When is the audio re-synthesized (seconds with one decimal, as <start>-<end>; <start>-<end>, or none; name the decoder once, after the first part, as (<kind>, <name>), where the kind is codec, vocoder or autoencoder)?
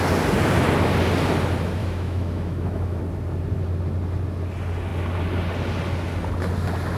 1.8-3.0 (autoencoder, DAC-VAE)